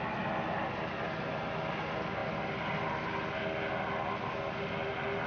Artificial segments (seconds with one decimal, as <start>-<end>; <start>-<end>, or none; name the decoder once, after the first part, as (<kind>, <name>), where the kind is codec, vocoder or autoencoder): none